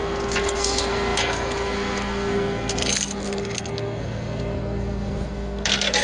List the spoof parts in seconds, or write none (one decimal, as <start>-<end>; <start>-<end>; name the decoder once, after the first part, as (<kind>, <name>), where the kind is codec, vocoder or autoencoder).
0.0-6.0 (codec, SNAC)